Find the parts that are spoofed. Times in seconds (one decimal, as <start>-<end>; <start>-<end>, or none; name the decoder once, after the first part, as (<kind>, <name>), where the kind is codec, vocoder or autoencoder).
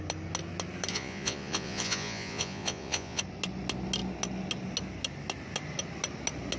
0.9-3.2 (vocoder, Vocos)